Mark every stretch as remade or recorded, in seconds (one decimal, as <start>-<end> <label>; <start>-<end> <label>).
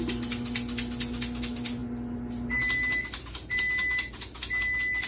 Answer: 0.0-5.1 recorded